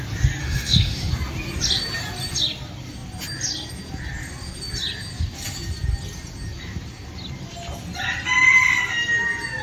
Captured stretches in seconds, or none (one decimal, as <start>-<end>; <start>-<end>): 0.0-0.4; 1.1-9.6